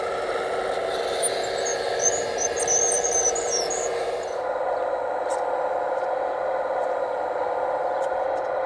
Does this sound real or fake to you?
real